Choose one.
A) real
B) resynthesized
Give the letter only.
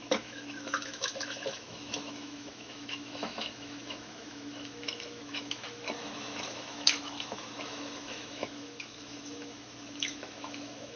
B